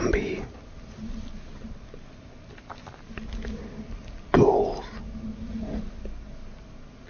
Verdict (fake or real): real